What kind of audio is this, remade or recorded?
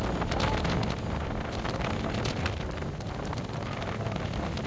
recorded